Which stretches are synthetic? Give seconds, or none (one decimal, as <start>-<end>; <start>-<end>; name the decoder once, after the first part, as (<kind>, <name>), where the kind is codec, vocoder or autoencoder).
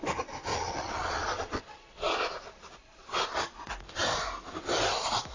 0.5-3.7 (vocoder, Vocos)